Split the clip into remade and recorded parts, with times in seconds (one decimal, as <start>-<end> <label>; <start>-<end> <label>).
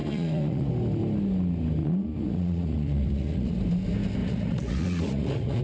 0.0-0.7 remade; 0.7-1.8 recorded; 1.8-3.6 remade; 3.6-4.2 recorded; 4.2-5.6 remade